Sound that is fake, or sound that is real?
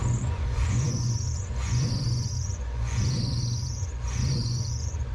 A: fake